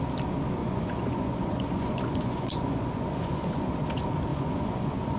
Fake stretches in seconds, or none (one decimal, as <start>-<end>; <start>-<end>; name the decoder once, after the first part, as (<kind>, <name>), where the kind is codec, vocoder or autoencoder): 0.6-3.7 (vocoder, Vocos); 4.3-5.2